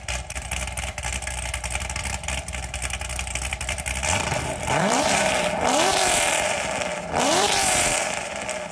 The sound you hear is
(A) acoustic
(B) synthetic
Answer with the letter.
B